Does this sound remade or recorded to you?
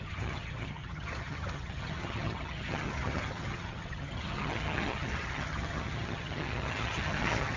remade